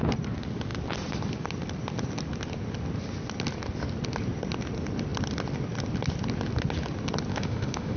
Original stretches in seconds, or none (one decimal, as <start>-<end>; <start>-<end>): 0.0-7.3

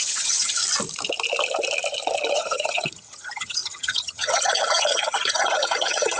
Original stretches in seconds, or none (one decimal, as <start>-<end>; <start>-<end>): 0.6-2.3

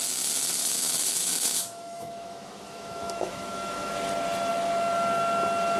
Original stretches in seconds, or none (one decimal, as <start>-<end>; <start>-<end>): 0.0-0.6; 3.9-5.8

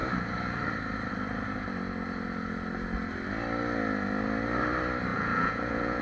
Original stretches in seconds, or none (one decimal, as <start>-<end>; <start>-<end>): 0.0-5.1

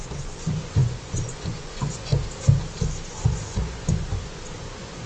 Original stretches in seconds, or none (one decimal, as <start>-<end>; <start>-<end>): 2.1-3.1

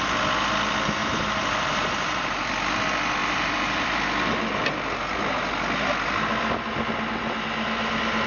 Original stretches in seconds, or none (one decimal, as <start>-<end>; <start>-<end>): 0.0-1.0; 2.5-3.2; 4.0-8.3

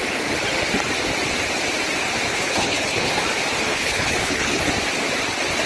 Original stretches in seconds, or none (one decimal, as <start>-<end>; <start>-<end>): 0.0-2.3; 3.1-3.7; 4.7-5.7

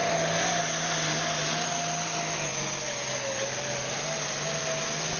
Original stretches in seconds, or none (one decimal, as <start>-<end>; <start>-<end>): 0.0-5.2